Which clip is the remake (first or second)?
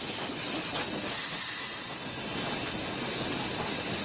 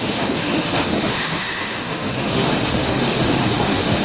second